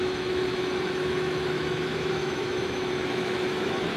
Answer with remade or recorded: remade